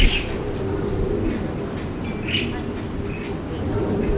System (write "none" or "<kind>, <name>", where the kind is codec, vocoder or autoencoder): none